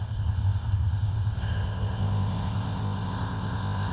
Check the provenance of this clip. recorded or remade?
remade